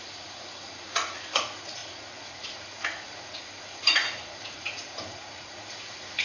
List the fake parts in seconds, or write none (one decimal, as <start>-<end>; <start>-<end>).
0.0-6.2